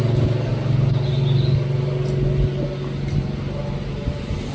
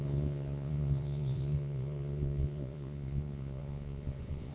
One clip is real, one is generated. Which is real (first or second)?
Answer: first